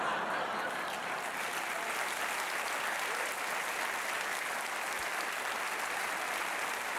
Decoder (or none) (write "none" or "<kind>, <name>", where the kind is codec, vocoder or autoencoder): none